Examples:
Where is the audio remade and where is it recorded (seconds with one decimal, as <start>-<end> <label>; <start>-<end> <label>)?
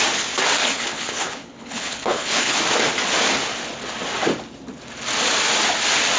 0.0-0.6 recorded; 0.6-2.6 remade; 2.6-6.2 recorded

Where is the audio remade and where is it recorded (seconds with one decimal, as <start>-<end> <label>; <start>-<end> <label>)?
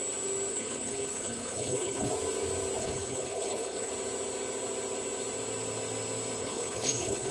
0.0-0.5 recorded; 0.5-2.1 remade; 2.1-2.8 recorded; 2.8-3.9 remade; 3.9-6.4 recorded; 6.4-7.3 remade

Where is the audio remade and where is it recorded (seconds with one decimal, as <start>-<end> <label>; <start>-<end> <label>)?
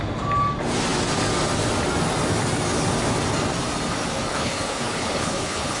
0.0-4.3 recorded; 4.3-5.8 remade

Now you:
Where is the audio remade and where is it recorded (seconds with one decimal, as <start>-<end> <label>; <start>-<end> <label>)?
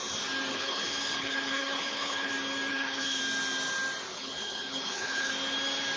0.0-0.5 recorded; 0.5-2.3 remade; 2.3-2.7 recorded; 2.7-3.2 remade; 3.2-4.1 recorded; 4.1-5.3 remade; 5.3-6.0 recorded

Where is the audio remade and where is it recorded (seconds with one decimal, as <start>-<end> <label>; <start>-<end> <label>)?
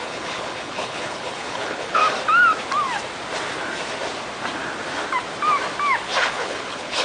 0.0-2.0 remade; 2.0-6.2 recorded; 6.2-7.0 remade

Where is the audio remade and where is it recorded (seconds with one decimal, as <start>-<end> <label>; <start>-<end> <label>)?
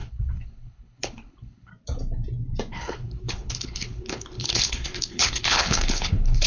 0.0-1.7 remade; 1.7-2.7 recorded; 2.7-6.5 remade